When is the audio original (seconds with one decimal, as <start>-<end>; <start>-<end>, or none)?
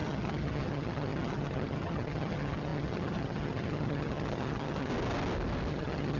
4.9-5.7